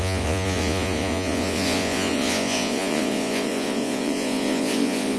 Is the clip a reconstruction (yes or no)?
yes